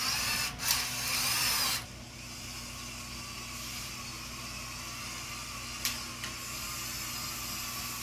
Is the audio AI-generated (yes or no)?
no